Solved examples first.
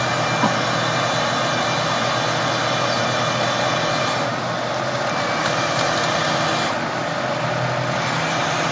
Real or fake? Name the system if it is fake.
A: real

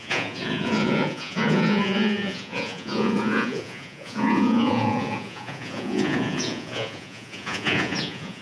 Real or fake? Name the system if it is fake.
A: fake, vocoder, Vocos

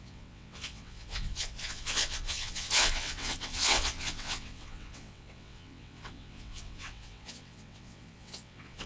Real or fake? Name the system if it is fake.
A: fake, vocoder, WaveNeXt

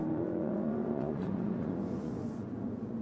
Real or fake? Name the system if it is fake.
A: fake, vocoder, Vocos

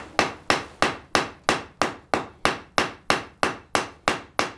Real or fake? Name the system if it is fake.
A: real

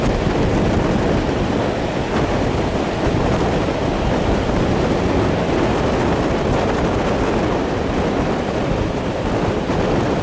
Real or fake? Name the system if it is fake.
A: real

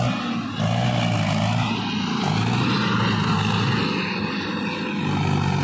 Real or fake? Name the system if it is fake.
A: real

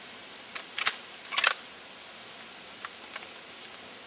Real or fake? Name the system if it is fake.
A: real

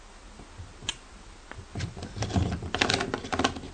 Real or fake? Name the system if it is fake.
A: real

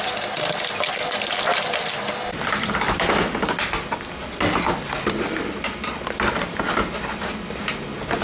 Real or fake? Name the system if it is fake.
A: real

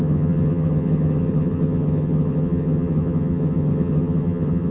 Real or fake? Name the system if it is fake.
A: fake, vocoder, HiFi-GAN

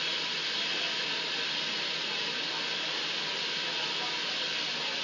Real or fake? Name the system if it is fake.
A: real